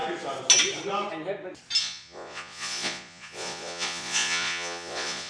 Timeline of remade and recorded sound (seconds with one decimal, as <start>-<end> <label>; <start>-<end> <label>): 0.0-1.8 recorded; 1.8-5.3 remade